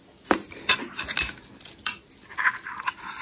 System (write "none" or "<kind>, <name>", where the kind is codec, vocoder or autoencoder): none